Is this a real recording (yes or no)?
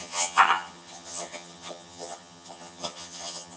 no